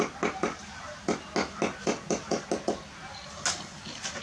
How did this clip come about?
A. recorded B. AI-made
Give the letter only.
A